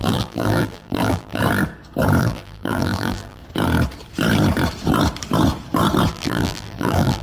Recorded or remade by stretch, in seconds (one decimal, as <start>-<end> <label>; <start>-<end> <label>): 0.0-1.4 remade; 1.4-2.2 recorded; 2.2-3.4 remade; 3.4-6.1 recorded; 6.1-7.2 remade